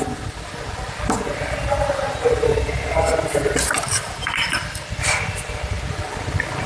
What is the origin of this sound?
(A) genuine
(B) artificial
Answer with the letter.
A